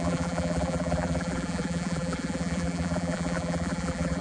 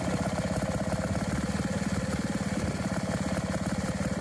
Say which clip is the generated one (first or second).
first